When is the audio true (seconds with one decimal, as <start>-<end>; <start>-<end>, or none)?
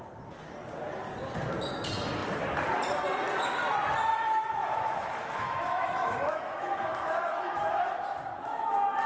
0.0-4.1; 8.7-9.1